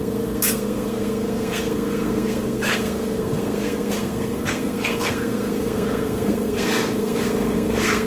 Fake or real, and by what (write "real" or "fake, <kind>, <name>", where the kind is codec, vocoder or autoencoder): fake, codec, SNAC